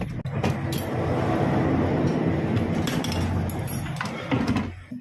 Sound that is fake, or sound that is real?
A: real